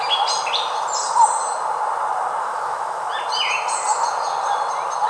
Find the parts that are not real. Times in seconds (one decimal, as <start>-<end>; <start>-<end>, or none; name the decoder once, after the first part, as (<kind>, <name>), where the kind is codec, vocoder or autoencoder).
2.4-3.1 (autoencoder, DAC-VAE)